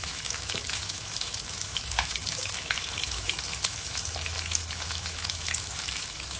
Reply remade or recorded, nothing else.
remade